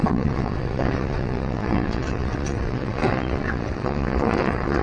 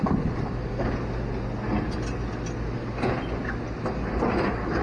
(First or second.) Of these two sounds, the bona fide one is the second